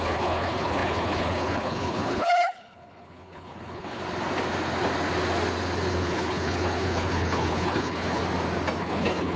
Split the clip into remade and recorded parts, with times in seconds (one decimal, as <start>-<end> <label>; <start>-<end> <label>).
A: 0.0-4.0 remade; 4.0-5.9 recorded; 5.9-8.2 remade; 8.2-8.8 recorded; 8.8-9.4 remade